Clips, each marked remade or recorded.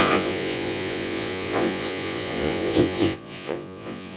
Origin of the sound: remade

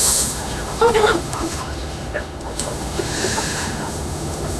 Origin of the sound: remade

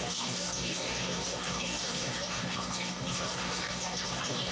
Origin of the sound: remade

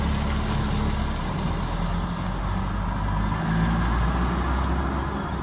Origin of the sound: recorded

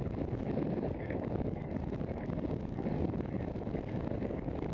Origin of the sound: remade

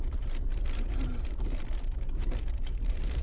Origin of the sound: remade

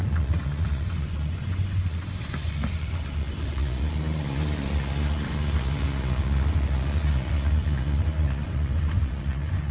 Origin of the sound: remade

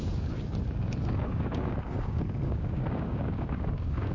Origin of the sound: remade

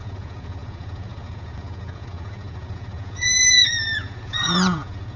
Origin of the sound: remade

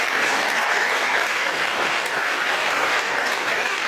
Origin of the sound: remade